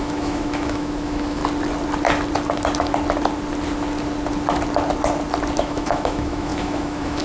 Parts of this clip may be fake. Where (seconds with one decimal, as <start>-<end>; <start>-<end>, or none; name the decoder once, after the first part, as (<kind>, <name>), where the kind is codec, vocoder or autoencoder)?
0.0-1.4 (autoencoder, DAC-VAE); 5.6-7.2